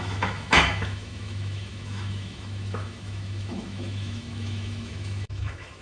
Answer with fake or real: fake